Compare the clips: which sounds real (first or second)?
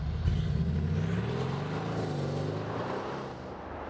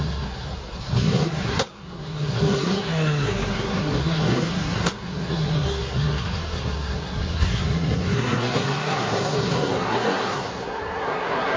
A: first